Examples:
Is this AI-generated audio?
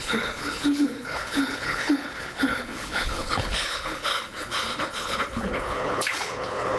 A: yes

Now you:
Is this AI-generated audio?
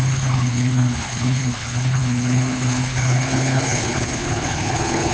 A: yes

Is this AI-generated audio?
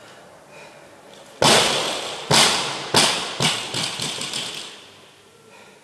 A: no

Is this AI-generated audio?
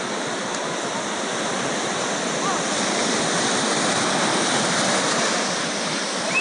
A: no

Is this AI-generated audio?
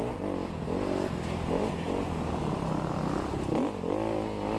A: no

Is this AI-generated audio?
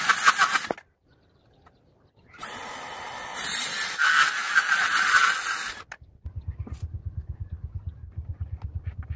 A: no